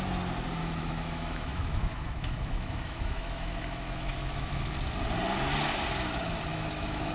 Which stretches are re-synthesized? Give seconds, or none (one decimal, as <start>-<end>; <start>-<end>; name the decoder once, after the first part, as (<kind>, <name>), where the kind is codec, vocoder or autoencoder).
0.6-4.7 (autoencoder, DAC-VAE); 6.5-7.1